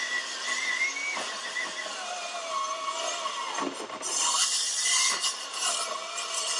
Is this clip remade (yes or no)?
no